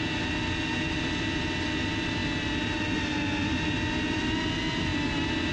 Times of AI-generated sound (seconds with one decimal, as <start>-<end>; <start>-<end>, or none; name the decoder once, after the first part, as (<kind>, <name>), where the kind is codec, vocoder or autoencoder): none